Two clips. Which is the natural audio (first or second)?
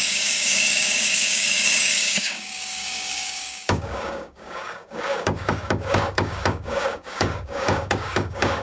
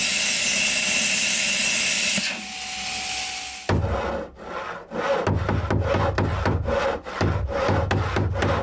second